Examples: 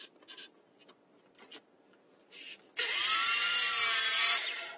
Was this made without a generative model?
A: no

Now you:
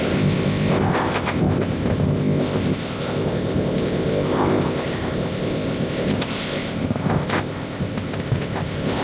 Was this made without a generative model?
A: no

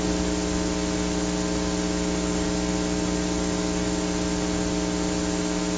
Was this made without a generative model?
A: yes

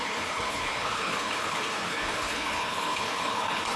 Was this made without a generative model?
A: no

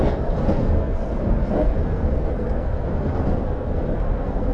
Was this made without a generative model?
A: no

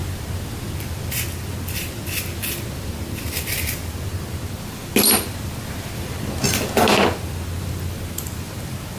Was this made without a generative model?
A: no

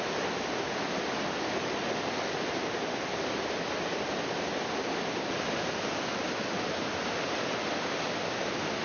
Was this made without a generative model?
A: yes